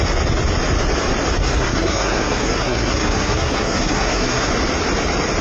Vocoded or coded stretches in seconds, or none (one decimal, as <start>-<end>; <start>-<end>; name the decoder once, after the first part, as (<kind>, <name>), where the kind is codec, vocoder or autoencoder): 1.4-4.5 (codec, SNAC)